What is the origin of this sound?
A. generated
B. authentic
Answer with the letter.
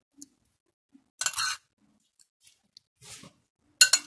B